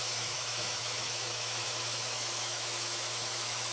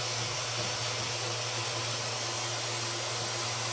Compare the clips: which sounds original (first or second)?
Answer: second